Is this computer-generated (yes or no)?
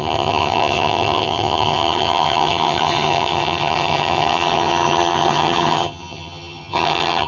yes